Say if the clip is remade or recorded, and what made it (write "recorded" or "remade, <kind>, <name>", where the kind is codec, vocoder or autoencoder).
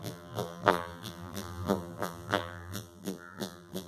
remade, vocoder, BigVGAN v2